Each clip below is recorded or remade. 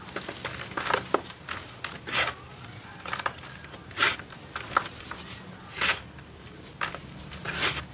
recorded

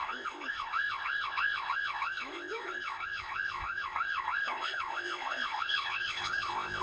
remade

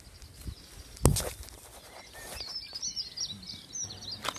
recorded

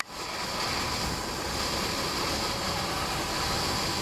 recorded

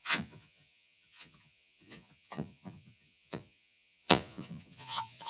remade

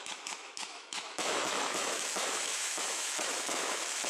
remade